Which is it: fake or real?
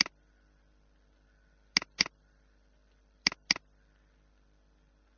real